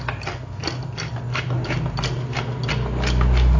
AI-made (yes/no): no